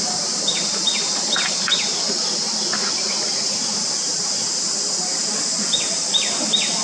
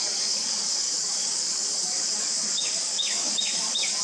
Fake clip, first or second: second